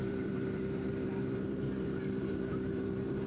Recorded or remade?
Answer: remade